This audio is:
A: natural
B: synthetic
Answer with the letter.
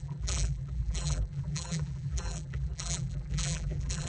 B